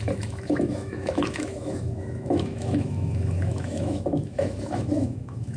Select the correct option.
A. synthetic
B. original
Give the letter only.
A